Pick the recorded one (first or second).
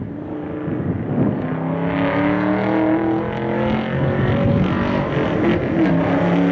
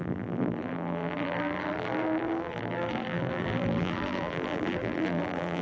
first